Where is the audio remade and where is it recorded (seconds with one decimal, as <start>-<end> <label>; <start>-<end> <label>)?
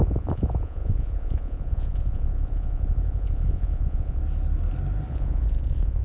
0.0-4.2 remade; 4.2-5.1 recorded; 5.1-6.0 remade